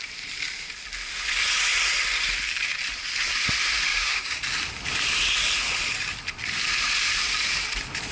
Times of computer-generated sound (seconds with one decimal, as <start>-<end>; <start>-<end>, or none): 3.9-4.4